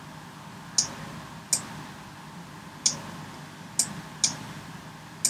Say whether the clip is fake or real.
real